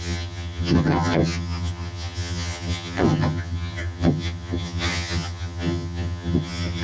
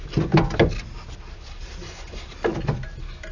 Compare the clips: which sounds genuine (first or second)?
second